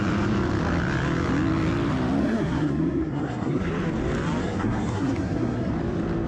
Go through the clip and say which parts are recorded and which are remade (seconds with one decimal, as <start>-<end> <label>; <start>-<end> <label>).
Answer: 0.0-2.2 recorded; 2.2-3.7 remade; 3.7-4.4 recorded; 4.4-5.7 remade; 5.7-6.3 recorded